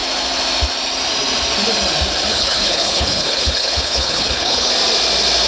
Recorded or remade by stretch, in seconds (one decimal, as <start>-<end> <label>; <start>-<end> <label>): 0.0-2.3 recorded; 2.3-4.7 remade; 4.7-5.5 recorded